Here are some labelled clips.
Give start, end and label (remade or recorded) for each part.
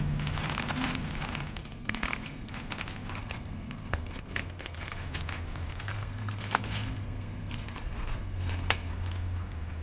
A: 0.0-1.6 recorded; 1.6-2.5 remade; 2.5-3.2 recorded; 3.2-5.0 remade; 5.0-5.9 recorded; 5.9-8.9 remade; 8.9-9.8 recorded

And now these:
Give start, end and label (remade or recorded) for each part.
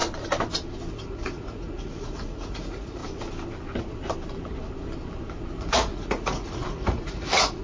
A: 0.0-0.9 recorded; 0.9-3.0 remade; 3.0-5.6 recorded; 5.6-7.6 remade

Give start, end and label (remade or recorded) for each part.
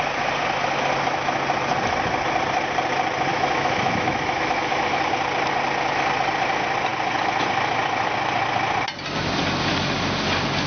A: 0.0-3.3 recorded; 3.3-5.1 remade; 5.1-10.7 recorded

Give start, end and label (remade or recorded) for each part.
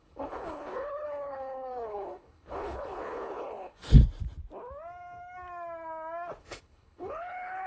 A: 0.0-4.0 remade; 4.0-6.4 recorded; 6.4-7.7 remade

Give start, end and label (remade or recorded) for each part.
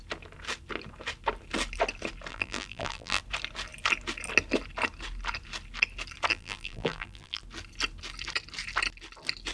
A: 0.0-2.3 recorded; 2.3-3.2 remade; 3.2-6.3 recorded; 6.3-7.4 remade; 7.4-9.5 recorded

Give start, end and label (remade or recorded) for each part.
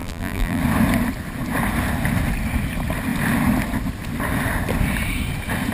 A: 0.0-0.6 remade; 0.6-5.7 recorded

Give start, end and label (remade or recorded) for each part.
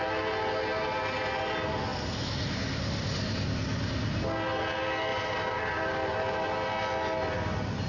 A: 0.0-5.1 recorded; 5.1-5.6 remade; 5.6-7.9 recorded